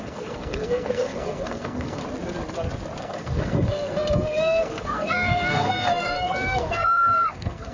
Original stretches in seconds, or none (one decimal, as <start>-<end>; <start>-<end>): 2.0-3.0